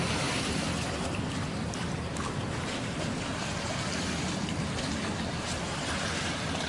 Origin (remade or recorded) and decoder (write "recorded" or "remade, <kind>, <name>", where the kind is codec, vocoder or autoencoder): remade, vocoder, BigVGAN v2